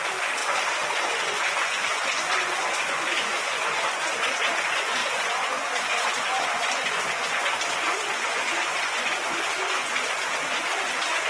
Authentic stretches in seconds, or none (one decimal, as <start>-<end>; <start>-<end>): none